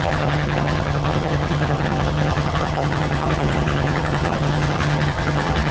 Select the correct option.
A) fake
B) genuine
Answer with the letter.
A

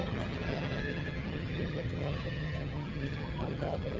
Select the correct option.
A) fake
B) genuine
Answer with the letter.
A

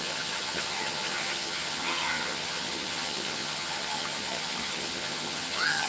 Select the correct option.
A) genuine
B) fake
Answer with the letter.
B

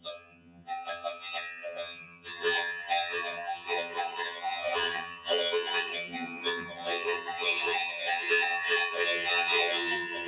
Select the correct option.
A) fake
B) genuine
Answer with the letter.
A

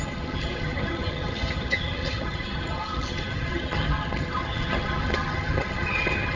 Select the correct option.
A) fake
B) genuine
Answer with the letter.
A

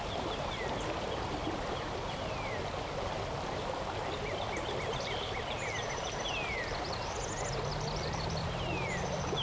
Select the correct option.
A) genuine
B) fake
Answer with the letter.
A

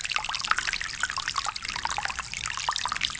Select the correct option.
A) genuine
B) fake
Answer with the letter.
A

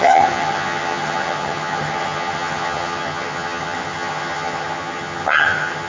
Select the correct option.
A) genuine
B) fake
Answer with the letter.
B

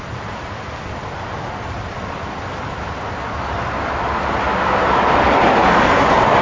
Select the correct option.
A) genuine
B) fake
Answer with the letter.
A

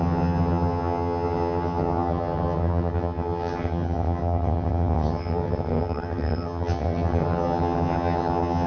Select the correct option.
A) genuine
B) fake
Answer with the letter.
B